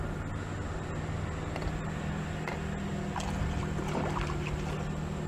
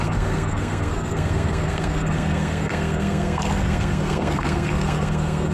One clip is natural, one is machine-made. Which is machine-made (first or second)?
second